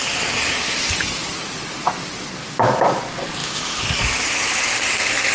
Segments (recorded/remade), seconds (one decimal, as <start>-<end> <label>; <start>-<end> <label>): 0.0-2.4 recorded; 2.4-3.0 remade; 3.0-3.4 recorded; 3.4-4.5 remade; 4.5-5.3 recorded